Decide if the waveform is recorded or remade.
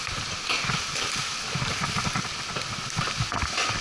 recorded